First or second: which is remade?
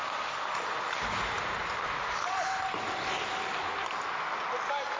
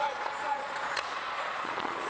second